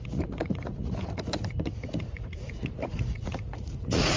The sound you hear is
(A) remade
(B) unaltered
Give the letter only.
A